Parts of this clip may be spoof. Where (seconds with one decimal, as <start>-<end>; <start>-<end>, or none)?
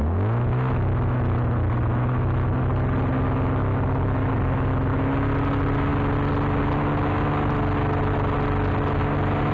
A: none